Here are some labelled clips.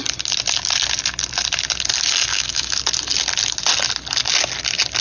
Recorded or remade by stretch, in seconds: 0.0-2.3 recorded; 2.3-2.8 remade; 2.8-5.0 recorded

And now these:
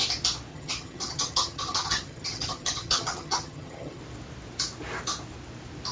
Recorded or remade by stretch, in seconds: 0.0-0.5 recorded; 0.5-4.0 remade; 4.0-5.9 recorded

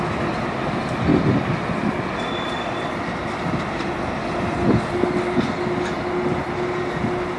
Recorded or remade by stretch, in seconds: 0.0-1.1 recorded; 1.1-4.1 remade; 4.1-7.4 recorded

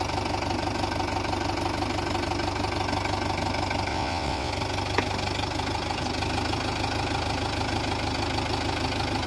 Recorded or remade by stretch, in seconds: 0.0-3.9 recorded; 3.9-4.5 remade; 4.5-9.3 recorded

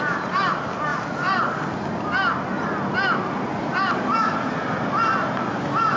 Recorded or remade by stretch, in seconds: 0.0-6.0 recorded

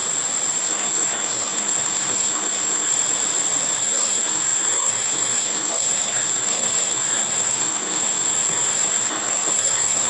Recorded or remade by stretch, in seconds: 0.0-0.6 recorded; 0.6-2.9 remade; 2.9-3.8 recorded; 3.8-10.1 remade